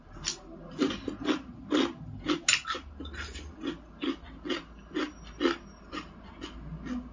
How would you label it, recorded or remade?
recorded